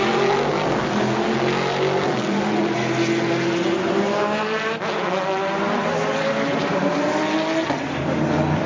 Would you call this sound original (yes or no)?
yes